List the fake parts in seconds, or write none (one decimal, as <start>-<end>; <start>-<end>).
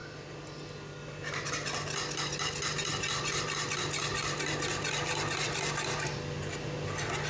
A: none